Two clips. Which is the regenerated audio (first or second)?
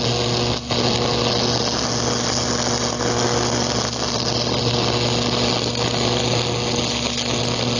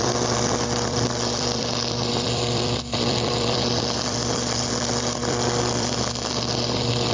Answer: second